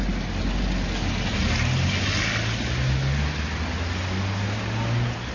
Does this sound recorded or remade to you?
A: recorded